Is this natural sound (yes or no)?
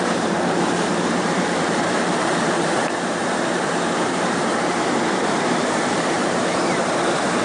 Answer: no